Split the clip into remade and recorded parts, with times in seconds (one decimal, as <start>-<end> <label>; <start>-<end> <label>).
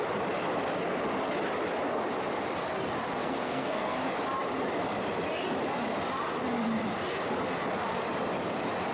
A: 0.0-3.2 recorded; 3.2-4.0 remade; 4.0-8.9 recorded